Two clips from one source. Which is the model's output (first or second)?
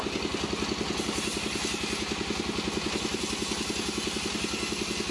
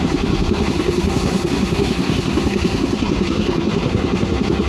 second